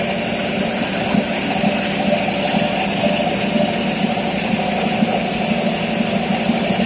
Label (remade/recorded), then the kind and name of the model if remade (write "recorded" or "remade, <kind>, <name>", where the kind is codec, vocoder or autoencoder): recorded